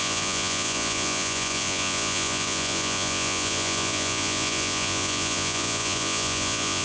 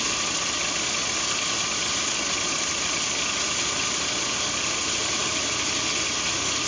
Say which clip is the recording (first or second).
second